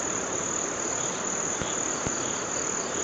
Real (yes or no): yes